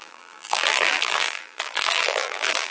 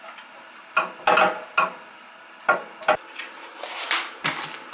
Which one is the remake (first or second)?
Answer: first